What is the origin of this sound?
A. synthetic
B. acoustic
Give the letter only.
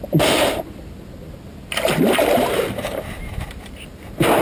B